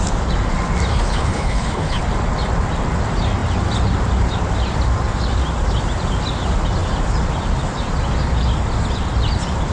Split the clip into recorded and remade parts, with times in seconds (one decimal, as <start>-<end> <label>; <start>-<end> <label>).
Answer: 0.0-0.9 recorded; 0.9-2.0 remade; 2.0-9.7 recorded